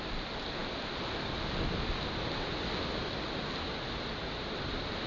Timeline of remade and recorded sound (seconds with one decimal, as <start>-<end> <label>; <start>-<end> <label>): 0.0-5.1 recorded